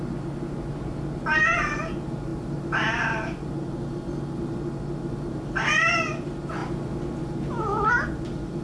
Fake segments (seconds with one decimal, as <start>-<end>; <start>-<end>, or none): none